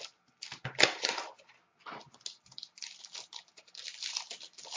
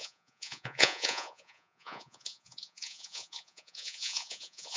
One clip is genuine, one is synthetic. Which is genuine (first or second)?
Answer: first